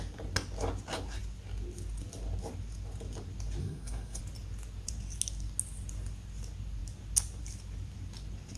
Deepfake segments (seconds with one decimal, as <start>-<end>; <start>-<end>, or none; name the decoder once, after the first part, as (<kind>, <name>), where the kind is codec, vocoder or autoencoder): 3.6-4.2 (codec, SNAC)